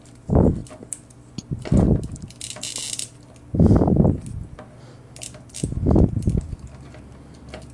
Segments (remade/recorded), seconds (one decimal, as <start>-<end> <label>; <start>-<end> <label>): 0.0-7.7 recorded